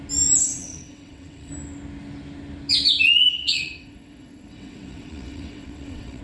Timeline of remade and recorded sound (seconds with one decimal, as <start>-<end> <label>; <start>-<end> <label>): 0.0-0.4 recorded; 0.4-1.5 remade; 1.5-3.3 recorded; 3.3-6.2 remade

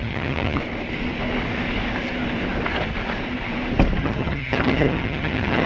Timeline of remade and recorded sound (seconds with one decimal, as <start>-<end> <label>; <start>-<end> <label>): 0.0-0.6 remade; 0.6-4.0 recorded; 4.0-5.7 remade

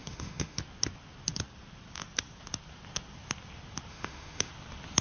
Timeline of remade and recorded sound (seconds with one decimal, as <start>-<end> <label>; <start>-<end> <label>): 0.0-0.6 remade; 0.6-3.9 recorded; 3.9-4.5 remade; 4.5-5.0 recorded